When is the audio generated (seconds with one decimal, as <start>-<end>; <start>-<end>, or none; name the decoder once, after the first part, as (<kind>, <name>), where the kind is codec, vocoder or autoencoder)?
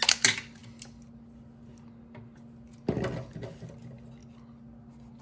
none